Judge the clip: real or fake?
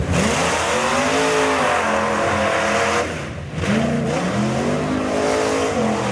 real